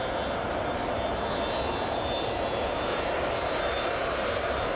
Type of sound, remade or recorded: recorded